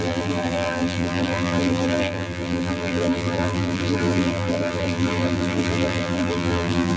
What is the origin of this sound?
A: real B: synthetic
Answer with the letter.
B